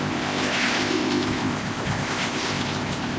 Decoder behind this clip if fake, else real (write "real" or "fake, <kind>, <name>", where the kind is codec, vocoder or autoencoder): fake, codec, ZipCodec